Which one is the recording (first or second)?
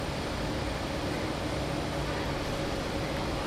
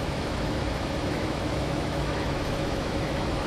first